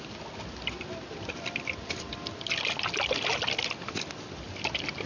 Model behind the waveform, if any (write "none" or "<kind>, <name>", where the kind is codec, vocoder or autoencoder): none